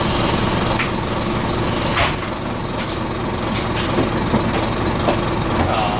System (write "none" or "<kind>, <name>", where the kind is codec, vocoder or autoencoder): none